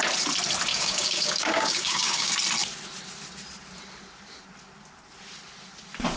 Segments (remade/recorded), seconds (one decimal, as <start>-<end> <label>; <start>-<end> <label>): 0.0-0.7 recorded; 0.7-2.3 remade; 2.3-6.2 recorded